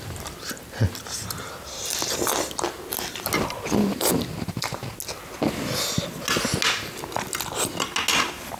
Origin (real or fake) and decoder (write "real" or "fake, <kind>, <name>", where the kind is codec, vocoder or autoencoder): real